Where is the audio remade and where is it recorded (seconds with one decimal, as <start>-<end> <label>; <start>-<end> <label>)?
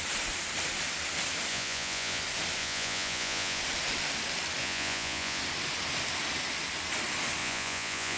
0.0-1.5 recorded; 1.5-2.2 remade; 2.2-2.6 recorded; 2.6-3.6 remade; 3.6-4.6 recorded; 4.6-5.4 remade; 5.4-7.4 recorded; 7.4-8.2 remade